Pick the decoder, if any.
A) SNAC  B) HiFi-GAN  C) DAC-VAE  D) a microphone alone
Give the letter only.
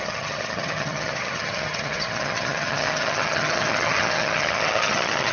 B